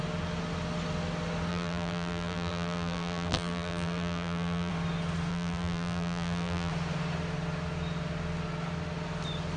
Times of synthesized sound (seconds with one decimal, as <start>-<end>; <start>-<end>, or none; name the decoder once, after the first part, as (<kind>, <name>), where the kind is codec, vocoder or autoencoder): 1.5-4.7 (vocoder, BigVGAN v2); 5.3-6.7